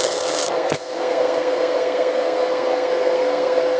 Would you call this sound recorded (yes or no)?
no